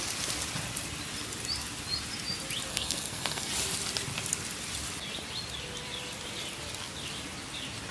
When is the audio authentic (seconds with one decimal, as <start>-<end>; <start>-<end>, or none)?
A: 0.0-2.7; 3.5-7.9